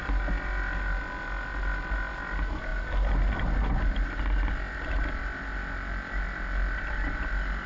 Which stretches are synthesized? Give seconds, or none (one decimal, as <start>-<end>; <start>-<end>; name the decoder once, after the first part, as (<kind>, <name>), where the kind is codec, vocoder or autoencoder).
none